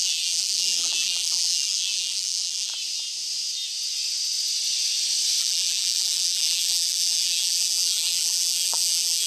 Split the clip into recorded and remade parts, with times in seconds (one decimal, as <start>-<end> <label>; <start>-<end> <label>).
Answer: 0.0-2.7 remade; 2.7-5.4 recorded; 5.4-9.3 remade